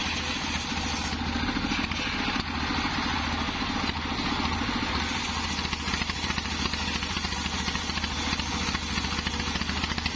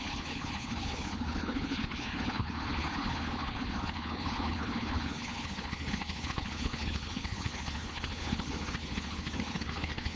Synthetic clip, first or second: second